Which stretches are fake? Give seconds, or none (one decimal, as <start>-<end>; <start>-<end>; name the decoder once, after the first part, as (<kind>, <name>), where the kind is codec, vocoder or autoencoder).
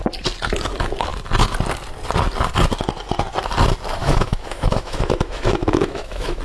4.0-6.4 (autoencoder, DAC-VAE)